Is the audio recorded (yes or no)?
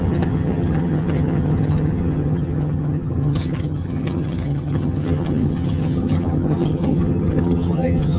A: no